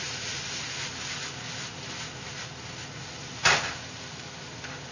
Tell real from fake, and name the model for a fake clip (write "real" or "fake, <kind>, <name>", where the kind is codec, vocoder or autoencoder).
real